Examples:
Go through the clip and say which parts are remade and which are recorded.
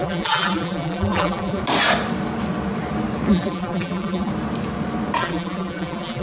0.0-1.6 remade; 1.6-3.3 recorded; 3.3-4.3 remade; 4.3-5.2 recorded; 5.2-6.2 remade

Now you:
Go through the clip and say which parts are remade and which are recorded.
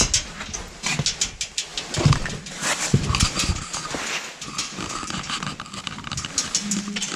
0.0-7.2 recorded